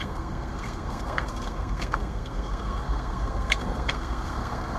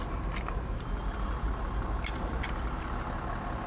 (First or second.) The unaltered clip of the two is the second